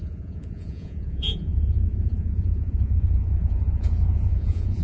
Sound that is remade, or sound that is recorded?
remade